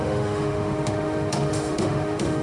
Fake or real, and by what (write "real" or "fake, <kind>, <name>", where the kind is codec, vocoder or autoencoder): fake, autoencoder, DAC-VAE